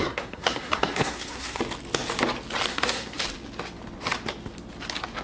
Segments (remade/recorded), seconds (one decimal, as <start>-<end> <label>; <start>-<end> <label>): 0.0-1.6 remade; 1.6-2.7 recorded; 2.7-3.2 remade; 3.2-5.2 recorded